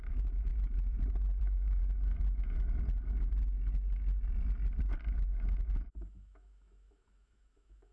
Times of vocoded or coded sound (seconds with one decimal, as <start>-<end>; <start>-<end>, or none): 0.0-0.5; 1.4-1.8; 6.1-7.9